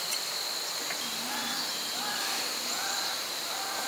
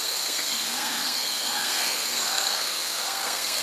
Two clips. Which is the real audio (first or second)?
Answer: first